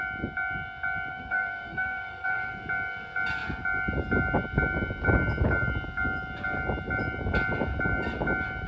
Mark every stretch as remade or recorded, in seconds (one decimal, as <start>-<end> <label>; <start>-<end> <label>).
0.0-1.1 recorded; 1.1-2.5 remade; 2.5-8.7 recorded